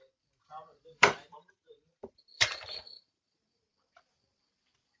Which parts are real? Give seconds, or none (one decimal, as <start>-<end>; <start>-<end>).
0.0-0.6; 3.6-5.0